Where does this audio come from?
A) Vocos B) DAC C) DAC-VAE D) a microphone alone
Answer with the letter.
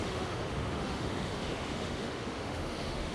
C